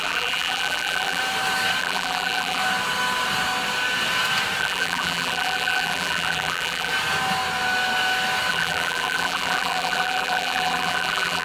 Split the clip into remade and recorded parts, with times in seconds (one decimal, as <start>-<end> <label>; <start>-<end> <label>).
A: 0.0-1.2 remade; 1.2-1.8 recorded; 1.8-2.6 remade; 2.6-4.6 recorded; 4.6-6.9 remade; 6.9-8.5 recorded; 8.5-11.4 remade